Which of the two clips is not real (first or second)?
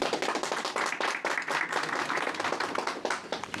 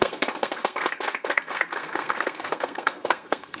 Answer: second